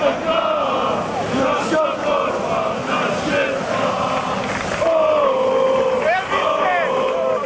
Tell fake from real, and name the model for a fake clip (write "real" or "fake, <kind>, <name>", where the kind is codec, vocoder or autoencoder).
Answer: real